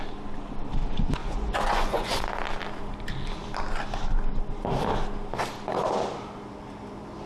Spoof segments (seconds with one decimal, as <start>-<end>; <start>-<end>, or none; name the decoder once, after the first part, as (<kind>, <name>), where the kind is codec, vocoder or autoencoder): 1.2-2.3 (vocoder, Vocos)